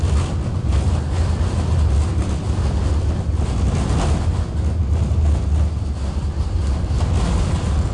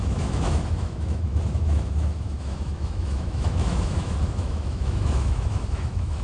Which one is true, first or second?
first